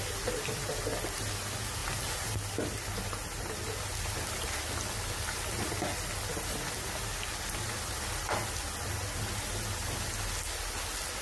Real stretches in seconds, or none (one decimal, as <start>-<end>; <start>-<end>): 0.0-11.2

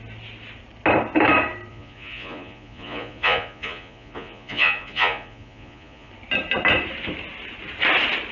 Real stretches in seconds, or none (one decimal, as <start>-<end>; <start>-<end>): 0.0-1.7; 6.1-8.3